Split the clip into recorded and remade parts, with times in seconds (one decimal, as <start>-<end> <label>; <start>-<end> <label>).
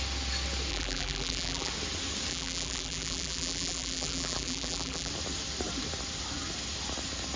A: 0.0-0.7 recorded; 0.7-1.7 remade; 1.7-2.3 recorded; 2.3-5.1 remade; 5.1-7.4 recorded